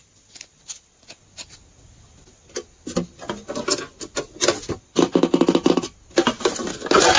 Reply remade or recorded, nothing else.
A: recorded